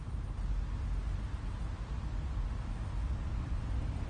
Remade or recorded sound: recorded